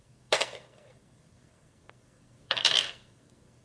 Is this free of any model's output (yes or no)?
no